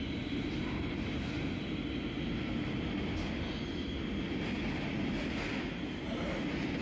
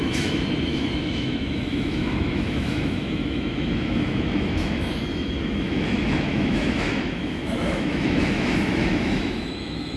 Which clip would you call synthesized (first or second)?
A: second